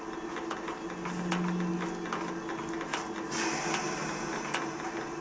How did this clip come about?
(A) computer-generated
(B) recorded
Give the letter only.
B